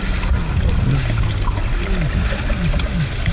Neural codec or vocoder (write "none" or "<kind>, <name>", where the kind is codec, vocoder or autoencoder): none